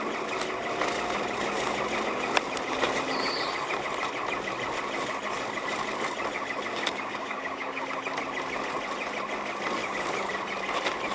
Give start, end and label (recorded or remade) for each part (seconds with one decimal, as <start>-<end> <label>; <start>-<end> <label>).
0.0-6.7 recorded; 6.7-7.8 remade; 7.8-11.1 recorded